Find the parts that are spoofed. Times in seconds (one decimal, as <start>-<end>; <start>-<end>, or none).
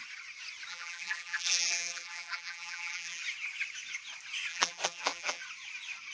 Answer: 0.7-3.2; 4.5-5.4